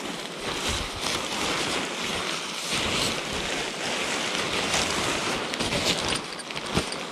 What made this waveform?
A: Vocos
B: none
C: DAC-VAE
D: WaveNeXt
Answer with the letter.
B